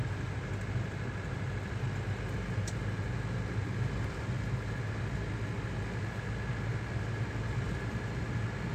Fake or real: real